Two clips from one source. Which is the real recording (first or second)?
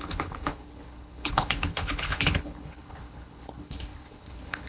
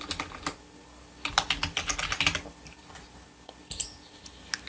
second